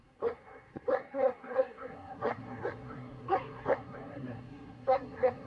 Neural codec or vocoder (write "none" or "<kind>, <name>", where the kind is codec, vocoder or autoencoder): codec, SNAC